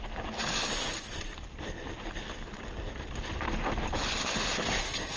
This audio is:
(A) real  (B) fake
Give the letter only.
A